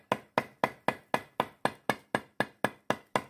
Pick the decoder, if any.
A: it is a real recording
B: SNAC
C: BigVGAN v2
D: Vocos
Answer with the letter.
A